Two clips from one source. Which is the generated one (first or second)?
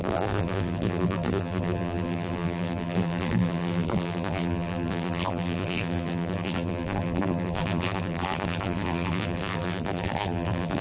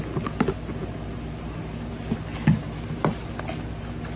first